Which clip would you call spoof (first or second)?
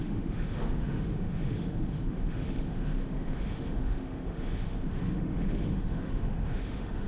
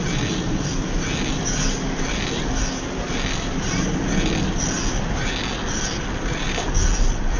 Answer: first